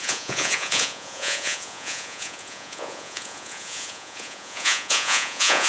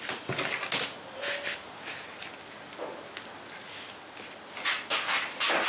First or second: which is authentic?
second